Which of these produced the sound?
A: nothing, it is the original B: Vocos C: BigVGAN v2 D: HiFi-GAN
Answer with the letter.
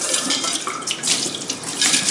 C